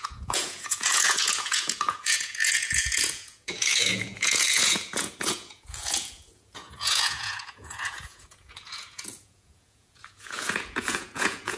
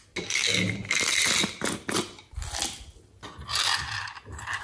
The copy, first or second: first